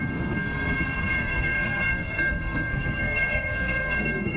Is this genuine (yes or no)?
no